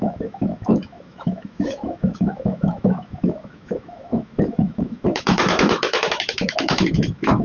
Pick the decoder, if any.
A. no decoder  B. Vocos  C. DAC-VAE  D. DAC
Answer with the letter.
C